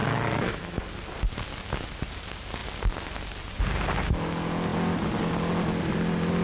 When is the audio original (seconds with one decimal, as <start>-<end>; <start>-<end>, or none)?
0.8-6.4